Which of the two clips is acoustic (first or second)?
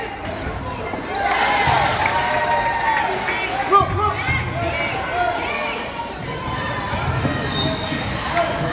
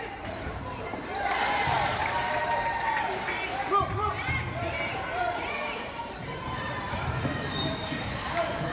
first